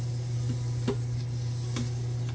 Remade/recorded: recorded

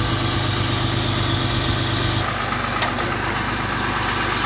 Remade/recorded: recorded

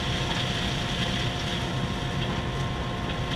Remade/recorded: recorded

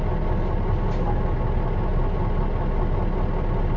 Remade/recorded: recorded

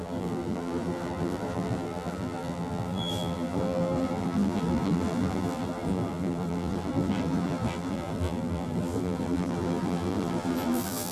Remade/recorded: remade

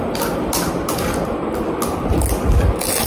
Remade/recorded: recorded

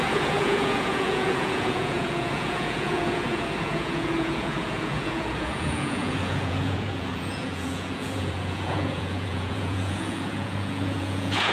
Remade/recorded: remade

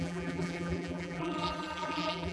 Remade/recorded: remade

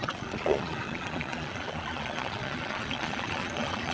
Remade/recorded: remade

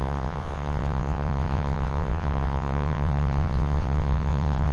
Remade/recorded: remade